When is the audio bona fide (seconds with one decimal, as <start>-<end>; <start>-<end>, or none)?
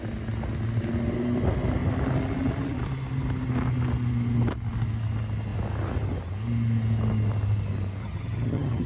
0.0-8.0